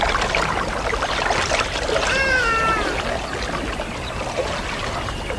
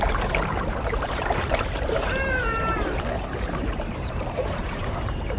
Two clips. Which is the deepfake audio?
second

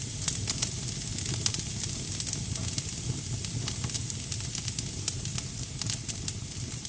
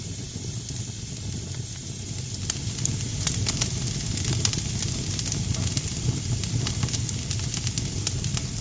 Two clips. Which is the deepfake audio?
second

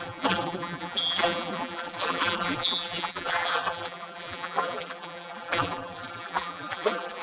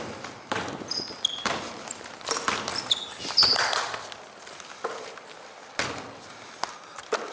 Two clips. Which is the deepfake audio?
first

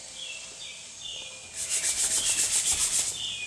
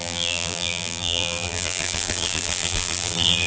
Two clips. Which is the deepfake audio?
second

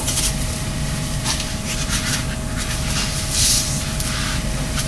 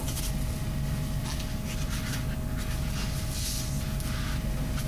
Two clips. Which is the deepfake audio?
first